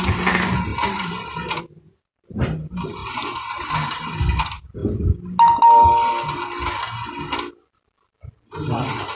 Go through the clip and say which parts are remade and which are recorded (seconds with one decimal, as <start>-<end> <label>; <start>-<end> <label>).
0.0-0.7 recorded; 0.7-1.6 remade; 1.6-3.0 recorded; 3.0-4.0 remade; 4.0-9.1 recorded